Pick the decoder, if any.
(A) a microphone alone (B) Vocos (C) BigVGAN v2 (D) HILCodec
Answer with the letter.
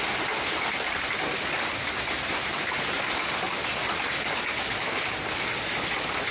A